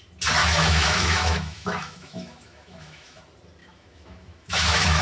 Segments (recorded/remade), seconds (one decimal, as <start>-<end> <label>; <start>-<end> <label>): 0.0-0.4 recorded; 0.4-3.2 remade; 3.2-3.6 recorded; 3.6-5.0 remade